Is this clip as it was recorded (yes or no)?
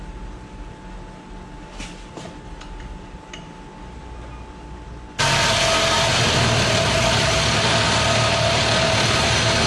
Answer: yes